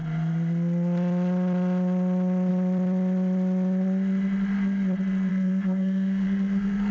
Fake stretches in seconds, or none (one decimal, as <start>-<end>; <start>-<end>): 5.3-6.9